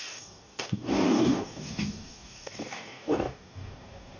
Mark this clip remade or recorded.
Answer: remade